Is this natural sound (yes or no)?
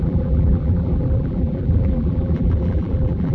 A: no